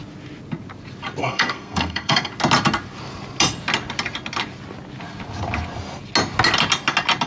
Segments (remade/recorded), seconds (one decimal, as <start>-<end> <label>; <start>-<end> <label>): 0.0-1.2 recorded; 1.2-2.3 remade; 2.3-7.3 recorded